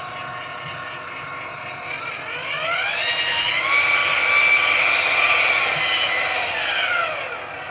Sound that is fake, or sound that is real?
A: real